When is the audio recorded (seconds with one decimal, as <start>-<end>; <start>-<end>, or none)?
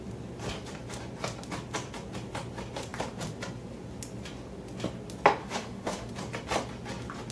0.0-5.4; 6.1-7.3